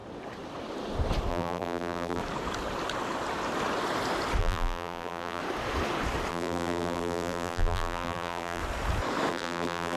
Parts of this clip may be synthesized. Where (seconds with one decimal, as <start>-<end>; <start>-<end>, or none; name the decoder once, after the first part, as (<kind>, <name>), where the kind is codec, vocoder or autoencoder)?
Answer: 1.3-2.2 (vocoder, BigVGAN v2); 4.4-5.4; 6.3-8.6; 9.3-10.0